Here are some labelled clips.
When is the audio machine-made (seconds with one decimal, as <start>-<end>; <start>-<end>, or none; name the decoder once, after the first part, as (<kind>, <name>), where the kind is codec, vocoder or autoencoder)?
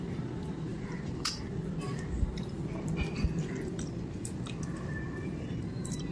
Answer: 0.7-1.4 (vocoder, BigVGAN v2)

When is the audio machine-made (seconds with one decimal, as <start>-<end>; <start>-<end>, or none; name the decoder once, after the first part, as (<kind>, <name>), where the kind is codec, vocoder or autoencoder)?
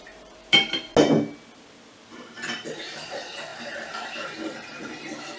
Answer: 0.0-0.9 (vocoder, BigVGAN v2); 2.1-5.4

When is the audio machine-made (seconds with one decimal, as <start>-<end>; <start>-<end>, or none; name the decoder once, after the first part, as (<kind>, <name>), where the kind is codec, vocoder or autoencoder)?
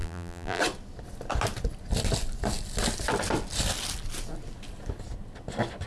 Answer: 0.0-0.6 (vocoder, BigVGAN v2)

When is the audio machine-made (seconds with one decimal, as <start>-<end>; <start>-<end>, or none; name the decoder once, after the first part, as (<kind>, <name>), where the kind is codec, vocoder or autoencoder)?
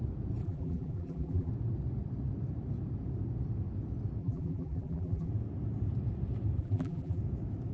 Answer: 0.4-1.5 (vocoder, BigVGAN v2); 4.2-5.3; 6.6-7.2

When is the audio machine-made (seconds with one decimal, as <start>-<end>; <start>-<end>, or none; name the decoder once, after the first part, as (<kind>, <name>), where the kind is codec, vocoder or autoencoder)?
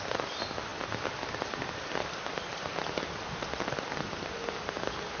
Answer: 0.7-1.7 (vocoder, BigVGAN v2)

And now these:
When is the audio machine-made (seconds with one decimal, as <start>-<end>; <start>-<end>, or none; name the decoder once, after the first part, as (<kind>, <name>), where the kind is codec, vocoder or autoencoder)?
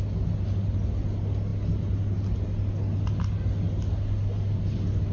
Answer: none